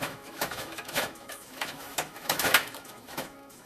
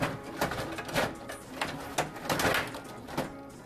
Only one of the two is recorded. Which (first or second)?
second